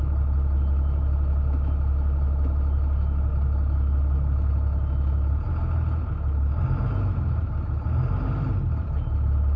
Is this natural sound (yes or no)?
yes